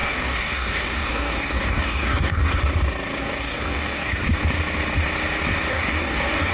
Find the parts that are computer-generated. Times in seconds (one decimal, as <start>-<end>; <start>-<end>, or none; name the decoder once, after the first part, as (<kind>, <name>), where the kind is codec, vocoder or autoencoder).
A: 0.0-2.5 (codec, DAC); 3.2-4.2; 5.7-6.5